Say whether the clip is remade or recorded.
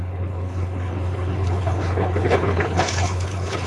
remade